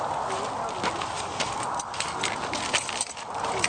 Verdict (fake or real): real